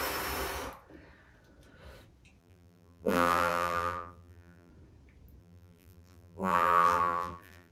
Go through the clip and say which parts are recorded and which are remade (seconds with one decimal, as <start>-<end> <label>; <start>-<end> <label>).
0.0-2.4 recorded; 2.4-4.7 remade; 4.7-5.4 recorded; 5.4-7.7 remade